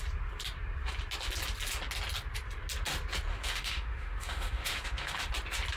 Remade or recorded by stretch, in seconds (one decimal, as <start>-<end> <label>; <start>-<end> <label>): 0.0-3.3 recorded; 3.3-5.3 remade; 5.3-5.8 recorded

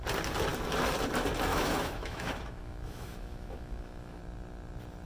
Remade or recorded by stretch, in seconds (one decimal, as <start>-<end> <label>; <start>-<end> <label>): 0.0-1.5 recorded; 1.5-4.2 remade; 4.2-5.1 recorded

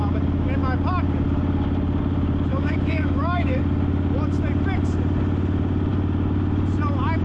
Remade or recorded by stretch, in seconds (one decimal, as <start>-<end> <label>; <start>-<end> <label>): 0.0-2.5 recorded; 2.5-3.6 remade; 3.6-7.2 recorded